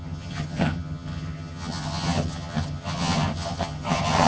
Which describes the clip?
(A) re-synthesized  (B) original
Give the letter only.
A